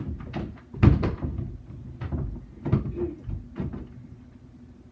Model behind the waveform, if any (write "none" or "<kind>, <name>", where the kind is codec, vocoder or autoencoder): none